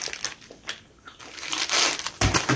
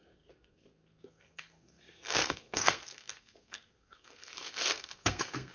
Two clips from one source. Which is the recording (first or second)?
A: first